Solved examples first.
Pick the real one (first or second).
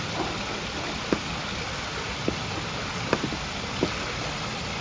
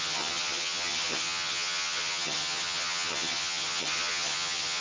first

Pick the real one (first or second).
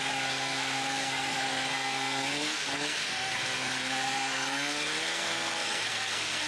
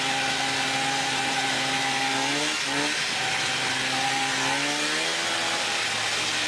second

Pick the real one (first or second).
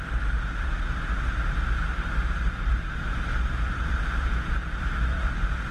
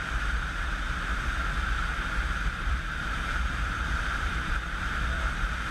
first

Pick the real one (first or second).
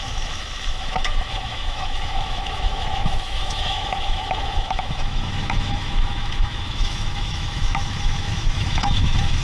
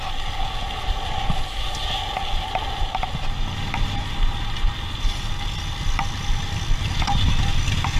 second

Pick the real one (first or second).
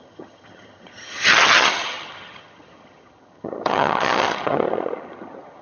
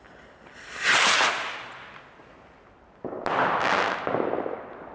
second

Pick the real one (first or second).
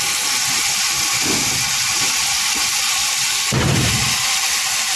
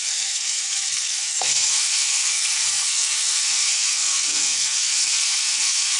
first